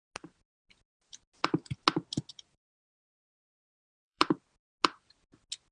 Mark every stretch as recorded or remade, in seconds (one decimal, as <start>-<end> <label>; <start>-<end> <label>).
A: 0.0-2.3 recorded; 2.3-4.4 remade; 4.4-5.7 recorded